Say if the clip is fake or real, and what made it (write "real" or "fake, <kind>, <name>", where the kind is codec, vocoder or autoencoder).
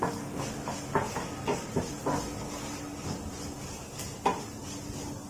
real